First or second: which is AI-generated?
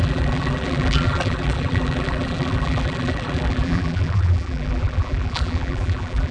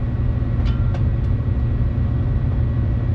first